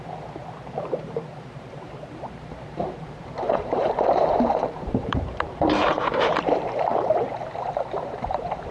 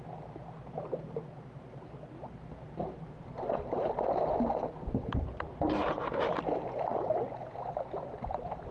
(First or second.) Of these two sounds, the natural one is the second